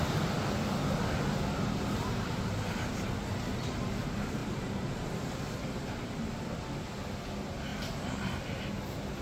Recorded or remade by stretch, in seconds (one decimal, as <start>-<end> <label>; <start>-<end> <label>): 0.0-4.4 recorded; 4.4-6.1 remade; 6.1-7.7 recorded; 7.7-8.6 remade; 8.6-9.2 recorded